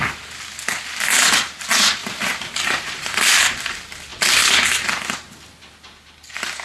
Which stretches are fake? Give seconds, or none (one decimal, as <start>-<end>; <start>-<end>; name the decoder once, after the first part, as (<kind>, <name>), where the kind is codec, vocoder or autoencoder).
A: 2.0-3.2 (vocoder, BigVGAN v2)